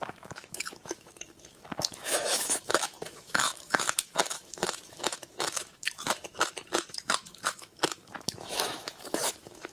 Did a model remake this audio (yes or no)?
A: yes